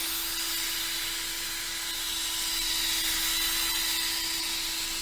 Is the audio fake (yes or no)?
no